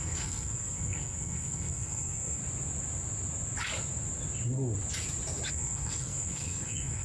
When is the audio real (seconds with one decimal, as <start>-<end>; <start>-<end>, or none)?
2.4-5.5